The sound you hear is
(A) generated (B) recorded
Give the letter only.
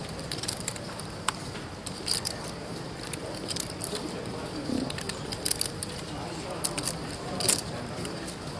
A